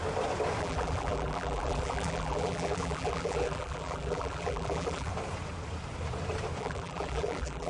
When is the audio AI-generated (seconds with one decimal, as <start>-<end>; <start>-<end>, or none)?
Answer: 0.6-5.1; 6.6-7.7

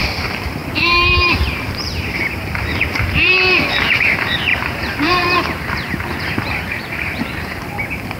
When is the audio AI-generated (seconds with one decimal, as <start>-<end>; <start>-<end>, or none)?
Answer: 0.0-8.2

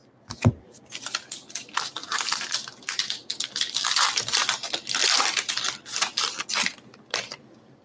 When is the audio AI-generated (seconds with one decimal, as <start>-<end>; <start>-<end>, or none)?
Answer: 0.5-4.4; 6.7-7.8

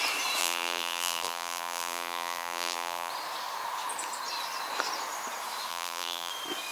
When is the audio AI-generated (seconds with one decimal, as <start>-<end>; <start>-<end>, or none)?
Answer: 0.4-3.1; 5.7-6.3

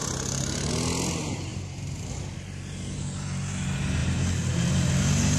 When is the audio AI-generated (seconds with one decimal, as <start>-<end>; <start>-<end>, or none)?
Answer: 0.0-0.7; 1.5-2.1; 4.0-5.4

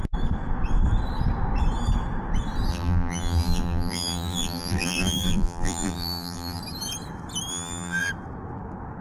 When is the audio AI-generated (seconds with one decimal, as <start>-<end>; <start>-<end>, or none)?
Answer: 2.7-6.6; 7.5-8.1

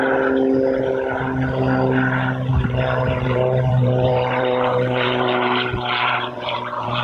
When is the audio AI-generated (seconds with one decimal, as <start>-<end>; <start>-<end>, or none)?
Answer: 2.5-7.0